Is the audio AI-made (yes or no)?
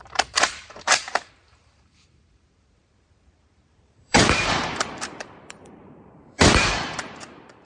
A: yes